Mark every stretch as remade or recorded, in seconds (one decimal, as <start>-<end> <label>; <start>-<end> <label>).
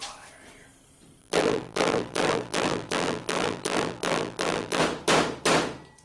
0.0-1.2 recorded; 1.2-4.8 remade; 4.8-6.0 recorded